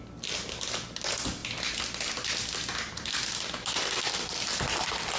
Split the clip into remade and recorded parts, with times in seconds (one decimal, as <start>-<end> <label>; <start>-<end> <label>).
0.0-5.2 recorded